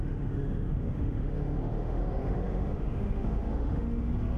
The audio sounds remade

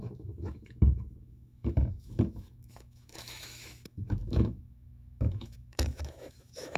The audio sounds remade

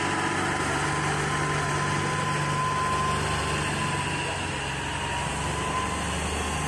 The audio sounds recorded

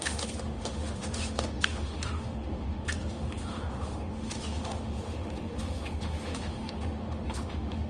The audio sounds remade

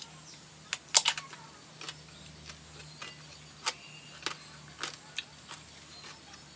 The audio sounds recorded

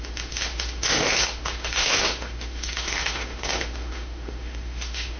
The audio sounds remade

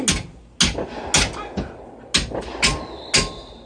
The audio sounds recorded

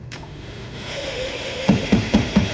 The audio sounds remade